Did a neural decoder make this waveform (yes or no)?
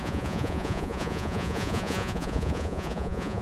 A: yes